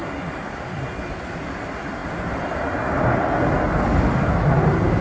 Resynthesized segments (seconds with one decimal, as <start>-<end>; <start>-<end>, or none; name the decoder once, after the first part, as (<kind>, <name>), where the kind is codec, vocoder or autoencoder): none